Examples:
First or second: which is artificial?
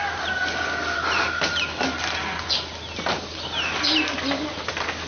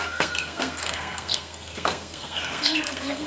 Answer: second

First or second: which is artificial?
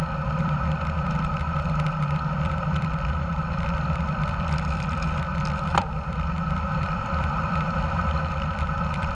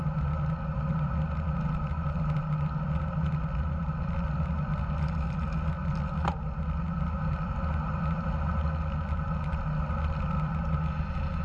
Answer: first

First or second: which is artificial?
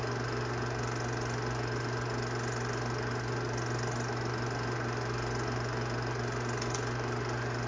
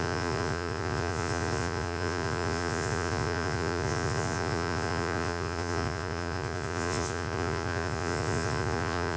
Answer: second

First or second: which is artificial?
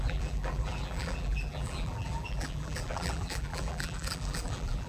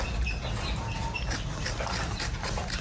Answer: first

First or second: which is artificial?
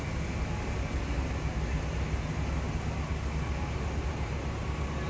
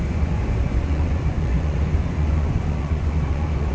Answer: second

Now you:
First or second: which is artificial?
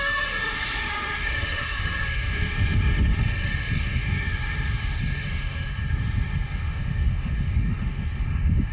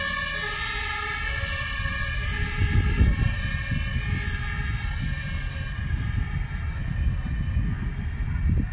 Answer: first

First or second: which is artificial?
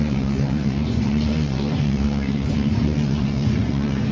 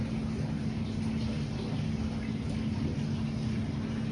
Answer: first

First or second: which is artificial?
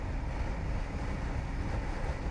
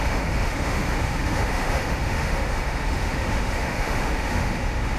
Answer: second